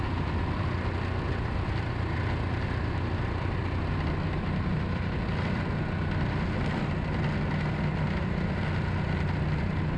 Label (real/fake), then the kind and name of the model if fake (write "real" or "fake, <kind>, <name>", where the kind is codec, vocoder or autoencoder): real